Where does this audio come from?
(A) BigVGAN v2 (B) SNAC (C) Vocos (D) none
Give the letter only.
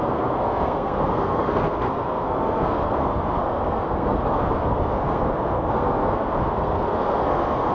B